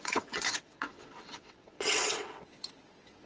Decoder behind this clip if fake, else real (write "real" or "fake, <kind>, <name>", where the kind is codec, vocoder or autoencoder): fake, vocoder, WaveNeXt